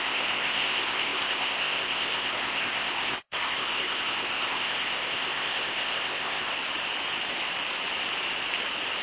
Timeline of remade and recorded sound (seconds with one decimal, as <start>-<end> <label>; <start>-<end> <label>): 0.0-6.5 remade; 6.5-9.0 recorded